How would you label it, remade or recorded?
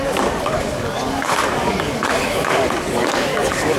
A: remade